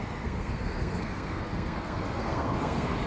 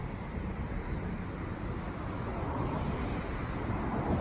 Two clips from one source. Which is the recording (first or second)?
second